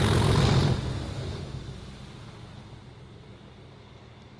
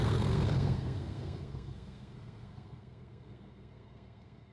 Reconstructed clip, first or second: second